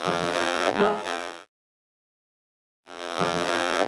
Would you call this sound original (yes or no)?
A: no